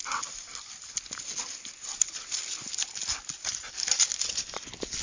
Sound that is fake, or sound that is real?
real